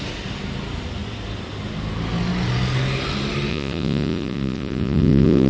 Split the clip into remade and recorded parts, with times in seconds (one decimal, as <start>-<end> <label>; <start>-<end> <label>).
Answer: 0.0-3.5 recorded; 3.5-5.5 remade